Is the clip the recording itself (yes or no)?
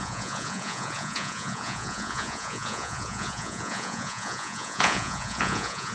no